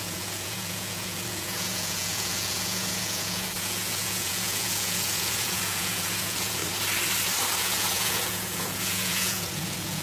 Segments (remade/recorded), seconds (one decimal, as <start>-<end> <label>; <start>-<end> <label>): 0.0-6.6 remade; 6.6-7.6 recorded; 7.6-10.0 remade